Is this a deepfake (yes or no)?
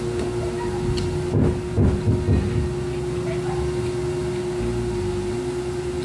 no